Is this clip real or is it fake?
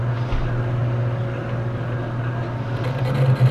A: real